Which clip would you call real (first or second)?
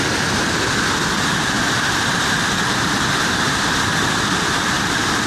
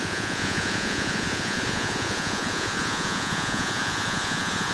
first